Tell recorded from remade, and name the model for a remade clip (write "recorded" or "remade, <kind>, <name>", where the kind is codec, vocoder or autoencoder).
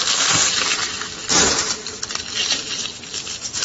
recorded